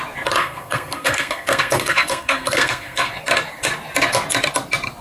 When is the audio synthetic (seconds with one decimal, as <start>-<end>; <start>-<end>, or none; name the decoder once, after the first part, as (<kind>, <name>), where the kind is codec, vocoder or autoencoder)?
0.4-3.1 (codec, SNAC)